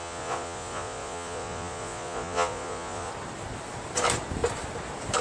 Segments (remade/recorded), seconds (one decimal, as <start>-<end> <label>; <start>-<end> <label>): 0.0-3.1 remade; 3.1-5.2 recorded